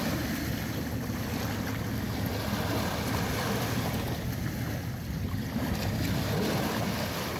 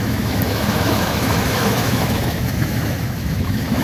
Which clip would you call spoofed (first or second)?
second